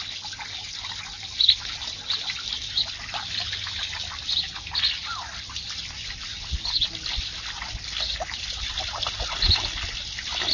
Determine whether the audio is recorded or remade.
recorded